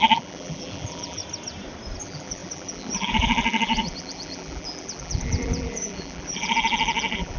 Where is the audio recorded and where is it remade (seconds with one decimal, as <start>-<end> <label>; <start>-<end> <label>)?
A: 0.0-1.2 remade; 1.2-2.0 recorded; 2.0-7.4 remade